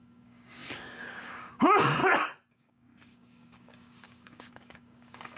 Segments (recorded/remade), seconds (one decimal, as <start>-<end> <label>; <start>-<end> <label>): 0.0-2.0 remade; 2.0-2.5 recorded; 2.5-5.4 remade